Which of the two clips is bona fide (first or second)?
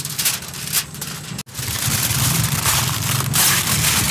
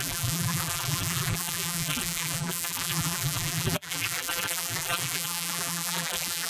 first